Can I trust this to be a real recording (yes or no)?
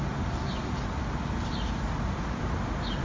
yes